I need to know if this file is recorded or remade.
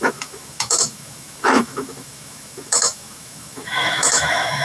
remade